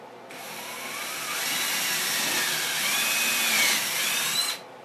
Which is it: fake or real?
real